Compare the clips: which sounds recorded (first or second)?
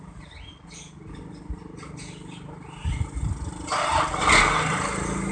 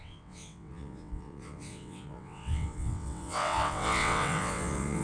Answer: first